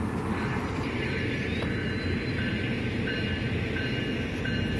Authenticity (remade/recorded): recorded